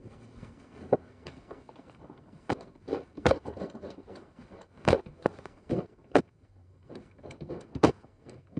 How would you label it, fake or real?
fake